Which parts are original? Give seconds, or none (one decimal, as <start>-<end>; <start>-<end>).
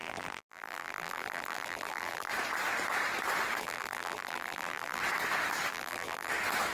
2.3-3.6; 5.0-5.7; 6.3-6.7